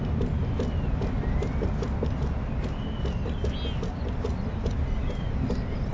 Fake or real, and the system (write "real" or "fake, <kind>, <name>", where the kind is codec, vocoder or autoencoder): real